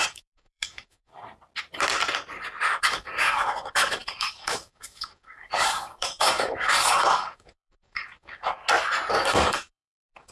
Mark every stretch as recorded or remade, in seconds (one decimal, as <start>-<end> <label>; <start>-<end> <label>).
0.0-1.1 remade; 1.1-2.8 recorded; 2.8-8.6 remade; 8.6-9.1 recorded; 9.1-10.3 remade